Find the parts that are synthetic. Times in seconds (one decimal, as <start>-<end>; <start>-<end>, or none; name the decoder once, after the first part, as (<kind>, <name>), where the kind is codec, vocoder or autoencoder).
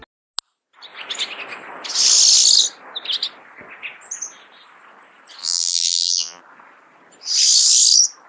5.4-6.4 (vocoder, BigVGAN v2)